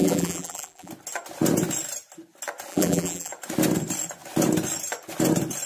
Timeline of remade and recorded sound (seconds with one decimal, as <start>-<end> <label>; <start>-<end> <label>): 0.0-0.9 remade; 0.9-2.7 recorded; 2.7-3.3 remade; 3.3-5.7 recorded